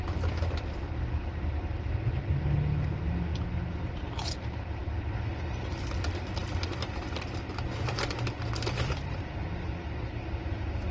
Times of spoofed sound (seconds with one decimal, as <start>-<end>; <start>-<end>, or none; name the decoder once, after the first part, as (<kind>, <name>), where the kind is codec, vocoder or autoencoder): none